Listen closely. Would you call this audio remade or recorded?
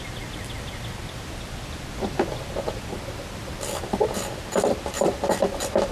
remade